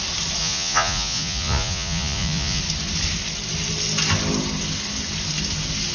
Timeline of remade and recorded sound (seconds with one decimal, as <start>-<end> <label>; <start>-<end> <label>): 0.0-0.4 recorded; 0.4-2.6 remade; 2.6-5.9 recorded